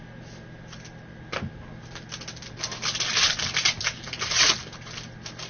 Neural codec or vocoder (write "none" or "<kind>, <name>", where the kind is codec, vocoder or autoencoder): none